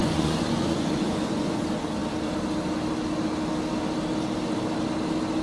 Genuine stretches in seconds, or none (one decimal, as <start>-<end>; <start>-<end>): 1.6-5.4